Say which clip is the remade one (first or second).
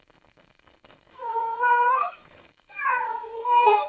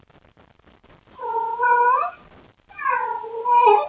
first